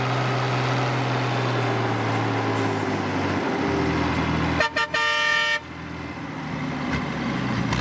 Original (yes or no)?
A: yes